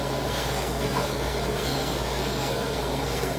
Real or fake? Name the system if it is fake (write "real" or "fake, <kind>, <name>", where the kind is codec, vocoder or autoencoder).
fake, codec, SNAC